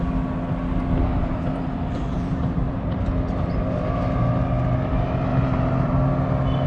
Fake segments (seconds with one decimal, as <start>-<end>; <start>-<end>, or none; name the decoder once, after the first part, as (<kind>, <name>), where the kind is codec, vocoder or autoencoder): 1.1-3.1 (vocoder, BigVGAN v2); 5.3-5.9